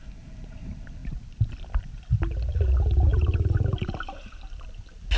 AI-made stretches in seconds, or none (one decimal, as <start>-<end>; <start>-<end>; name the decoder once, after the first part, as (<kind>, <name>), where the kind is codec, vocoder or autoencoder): 3.1-4.3 (vocoder, BigVGAN v2)